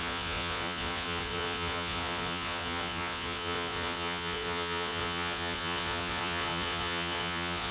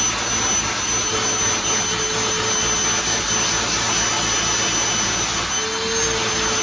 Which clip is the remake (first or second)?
first